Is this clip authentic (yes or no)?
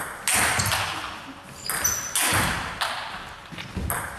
yes